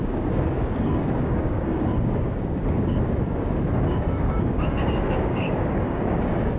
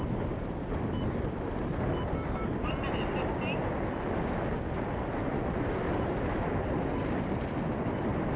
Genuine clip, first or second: second